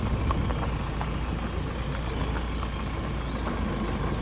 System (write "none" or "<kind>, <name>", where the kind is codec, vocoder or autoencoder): none